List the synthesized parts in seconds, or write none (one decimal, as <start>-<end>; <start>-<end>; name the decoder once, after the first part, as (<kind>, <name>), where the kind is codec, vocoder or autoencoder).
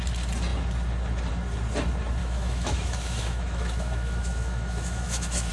2.2-5.5 (autoencoder, DAC-VAE)